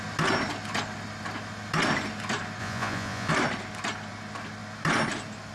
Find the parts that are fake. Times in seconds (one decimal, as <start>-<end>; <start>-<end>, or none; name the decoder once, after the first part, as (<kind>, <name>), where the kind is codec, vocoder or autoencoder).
2.6-3.3 (vocoder, Vocos)